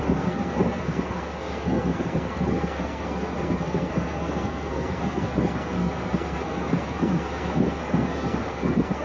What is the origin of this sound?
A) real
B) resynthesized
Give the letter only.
B